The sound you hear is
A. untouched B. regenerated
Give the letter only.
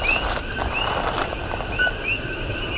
A